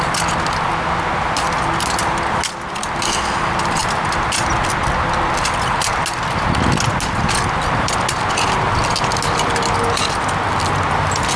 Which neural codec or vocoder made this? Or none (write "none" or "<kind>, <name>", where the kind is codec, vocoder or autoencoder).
none